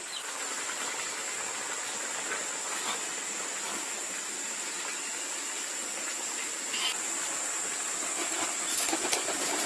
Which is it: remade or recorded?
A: recorded